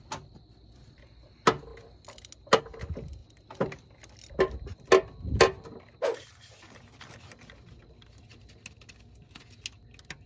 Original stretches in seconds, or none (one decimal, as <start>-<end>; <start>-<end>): 0.0-10.3